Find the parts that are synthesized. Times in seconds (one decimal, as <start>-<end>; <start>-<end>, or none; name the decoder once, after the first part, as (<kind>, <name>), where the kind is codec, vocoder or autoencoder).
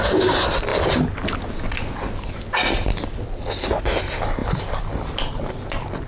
none